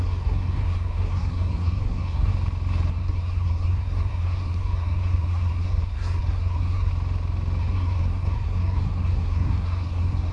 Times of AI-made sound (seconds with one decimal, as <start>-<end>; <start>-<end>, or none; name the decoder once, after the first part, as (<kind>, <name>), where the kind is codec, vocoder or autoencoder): 0.0-2.3 (codec, SNAC); 2.9-6.9; 7.6-10.3